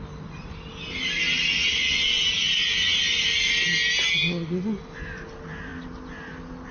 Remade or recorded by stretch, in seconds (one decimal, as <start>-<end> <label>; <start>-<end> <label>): 0.0-1.6 recorded; 1.6-2.2 remade; 2.2-6.7 recorded